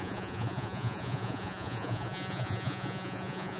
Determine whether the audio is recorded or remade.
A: remade